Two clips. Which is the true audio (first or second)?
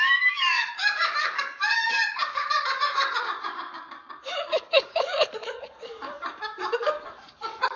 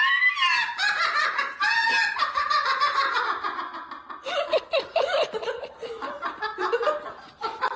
second